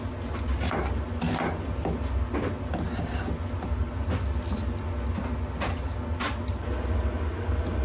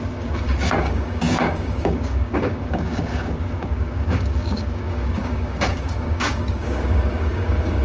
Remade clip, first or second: second